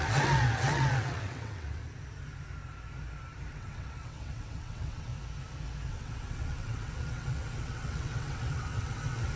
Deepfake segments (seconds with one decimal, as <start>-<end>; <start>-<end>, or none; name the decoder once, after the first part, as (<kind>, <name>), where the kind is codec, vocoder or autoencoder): 0.0-1.8 (vocoder, WaveNeXt); 3.5-5.1; 5.9-9.4